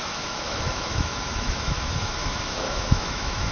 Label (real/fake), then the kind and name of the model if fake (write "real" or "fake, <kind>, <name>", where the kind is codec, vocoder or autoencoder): fake, autoencoder, DAC-VAE